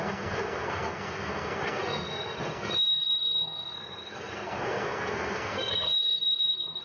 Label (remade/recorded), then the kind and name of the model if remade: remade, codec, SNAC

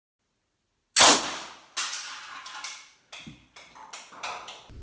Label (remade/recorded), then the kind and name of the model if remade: recorded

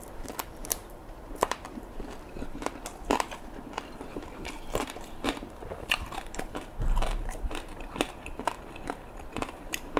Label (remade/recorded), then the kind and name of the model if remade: remade, vocoder, BigVGAN v2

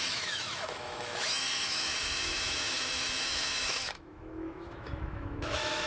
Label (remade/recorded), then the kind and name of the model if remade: remade, autoencoder, DAC-VAE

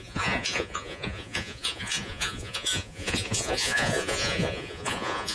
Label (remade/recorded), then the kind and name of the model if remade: remade, vocoder, Vocos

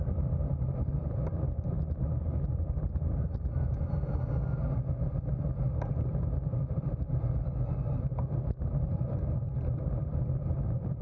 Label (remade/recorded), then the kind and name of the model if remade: remade, vocoder, BigVGAN v2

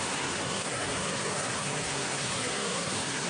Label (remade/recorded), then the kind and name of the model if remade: remade, codec, SNAC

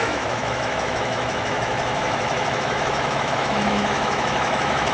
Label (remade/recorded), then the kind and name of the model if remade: remade, autoencoder, DAC-VAE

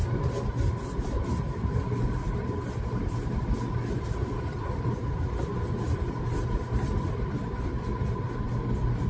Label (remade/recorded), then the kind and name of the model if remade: recorded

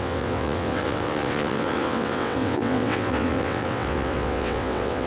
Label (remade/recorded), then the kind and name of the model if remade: remade, vocoder, WaveNeXt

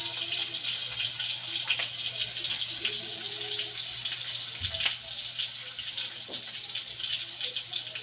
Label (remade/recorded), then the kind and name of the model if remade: recorded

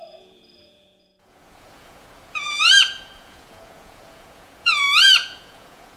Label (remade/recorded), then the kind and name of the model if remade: remade, vocoder, Vocos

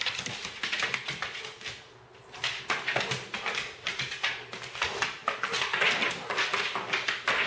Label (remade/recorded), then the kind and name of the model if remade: recorded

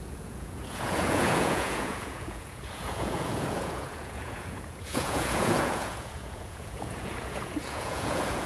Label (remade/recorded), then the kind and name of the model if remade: remade, vocoder, Vocos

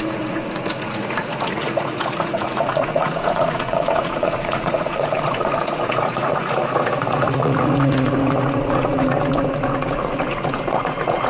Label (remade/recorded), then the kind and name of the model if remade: remade, vocoder, Vocos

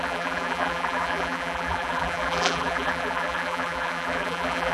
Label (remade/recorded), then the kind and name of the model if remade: remade, vocoder, BigVGAN v2